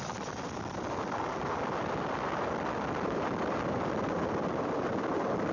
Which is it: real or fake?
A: real